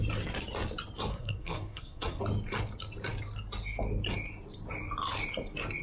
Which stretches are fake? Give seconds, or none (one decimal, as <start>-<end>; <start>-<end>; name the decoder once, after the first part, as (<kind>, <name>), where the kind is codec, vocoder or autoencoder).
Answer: 1.1-2.2 (codec, SNAC)